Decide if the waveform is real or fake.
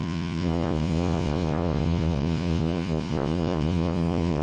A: fake